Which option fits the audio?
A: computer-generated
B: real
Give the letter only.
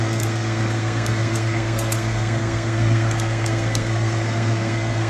A